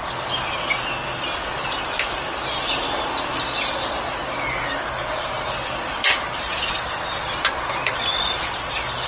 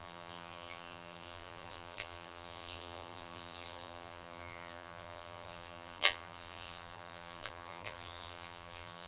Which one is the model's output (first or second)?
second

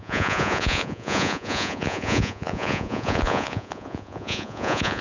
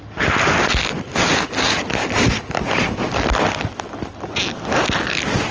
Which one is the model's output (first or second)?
first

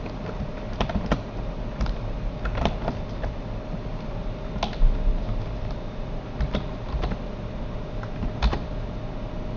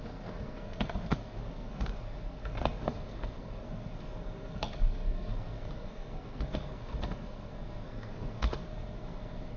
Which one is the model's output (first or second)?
second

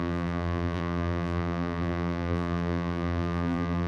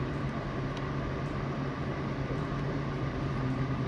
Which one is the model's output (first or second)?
first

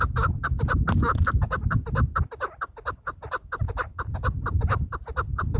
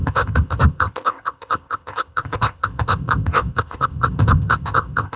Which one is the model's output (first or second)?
second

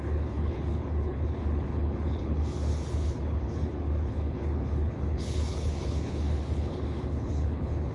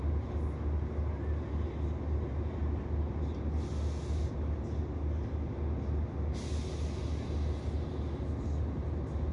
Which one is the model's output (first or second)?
first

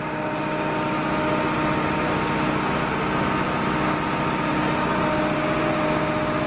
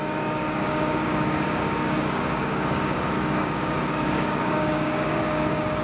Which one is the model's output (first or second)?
second